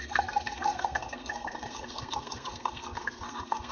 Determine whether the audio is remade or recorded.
remade